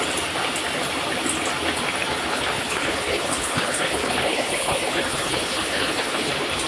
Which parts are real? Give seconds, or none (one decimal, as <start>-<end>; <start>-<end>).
0.0-2.3; 6.3-6.7